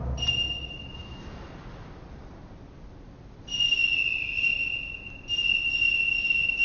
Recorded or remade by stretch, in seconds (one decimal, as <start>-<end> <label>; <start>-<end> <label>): 0.0-6.6 recorded